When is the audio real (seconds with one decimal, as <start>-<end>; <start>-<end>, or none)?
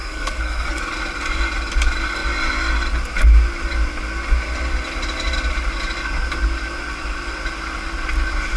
0.8-8.6